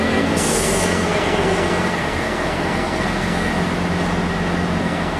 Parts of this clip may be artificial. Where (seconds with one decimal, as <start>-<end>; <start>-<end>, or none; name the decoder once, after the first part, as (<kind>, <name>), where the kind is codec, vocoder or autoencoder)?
0.0-3.5 (codec, SNAC); 4.8-5.2